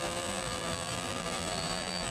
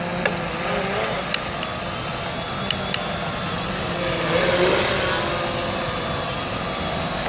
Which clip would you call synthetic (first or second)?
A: first